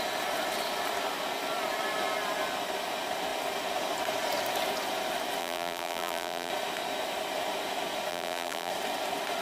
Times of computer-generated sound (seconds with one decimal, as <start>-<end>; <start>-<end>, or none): 5.4-6.5; 8.1-8.7